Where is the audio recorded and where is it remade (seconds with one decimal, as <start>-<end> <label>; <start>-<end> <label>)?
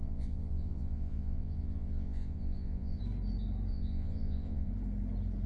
0.0-3.0 remade; 3.0-3.7 recorded; 3.7-4.7 remade; 4.7-5.5 recorded